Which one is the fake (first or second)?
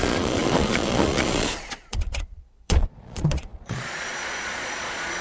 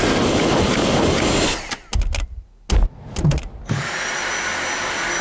first